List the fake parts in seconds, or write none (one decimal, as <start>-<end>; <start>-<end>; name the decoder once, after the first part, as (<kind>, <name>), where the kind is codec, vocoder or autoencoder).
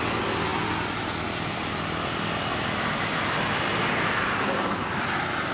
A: none